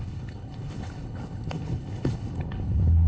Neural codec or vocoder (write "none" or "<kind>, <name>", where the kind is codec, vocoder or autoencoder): codec, HILCodec